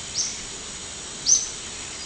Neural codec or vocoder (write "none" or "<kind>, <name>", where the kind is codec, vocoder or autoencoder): none